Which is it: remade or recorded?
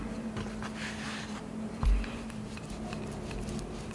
recorded